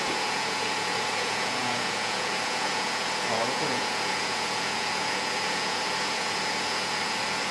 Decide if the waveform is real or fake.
fake